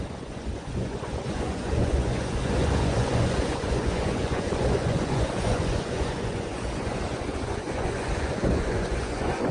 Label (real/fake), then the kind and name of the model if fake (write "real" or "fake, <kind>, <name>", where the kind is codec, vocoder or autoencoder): fake, vocoder, Vocos